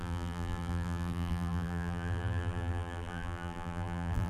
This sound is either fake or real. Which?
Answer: fake